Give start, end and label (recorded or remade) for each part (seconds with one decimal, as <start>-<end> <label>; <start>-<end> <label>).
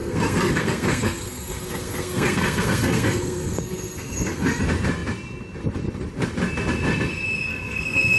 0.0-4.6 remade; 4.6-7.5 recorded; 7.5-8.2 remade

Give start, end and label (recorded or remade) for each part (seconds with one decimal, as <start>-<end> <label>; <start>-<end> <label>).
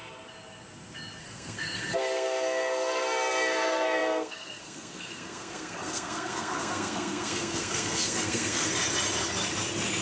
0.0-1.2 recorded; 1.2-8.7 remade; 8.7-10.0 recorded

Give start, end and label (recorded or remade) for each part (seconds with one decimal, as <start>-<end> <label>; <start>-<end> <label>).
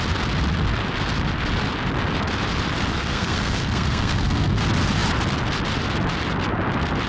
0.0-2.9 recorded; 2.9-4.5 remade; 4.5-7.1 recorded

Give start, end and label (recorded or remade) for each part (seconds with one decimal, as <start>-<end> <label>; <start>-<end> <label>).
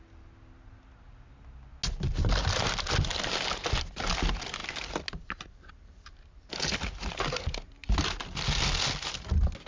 0.0-9.7 recorded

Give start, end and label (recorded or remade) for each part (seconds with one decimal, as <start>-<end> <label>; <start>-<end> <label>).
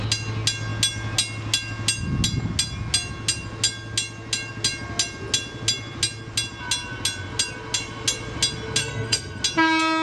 0.0-8.8 recorded; 8.8-9.4 remade; 9.4-10.0 recorded